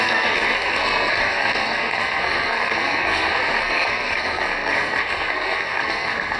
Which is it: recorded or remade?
remade